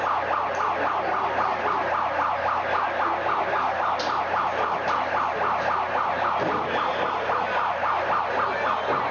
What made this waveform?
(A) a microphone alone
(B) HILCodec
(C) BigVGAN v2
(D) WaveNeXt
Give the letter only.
A